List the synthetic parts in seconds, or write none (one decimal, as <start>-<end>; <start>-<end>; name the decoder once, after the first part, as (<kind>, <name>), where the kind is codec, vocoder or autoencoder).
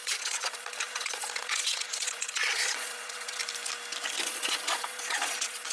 0.0-3.4 (vocoder, Vocos); 4.1-5.7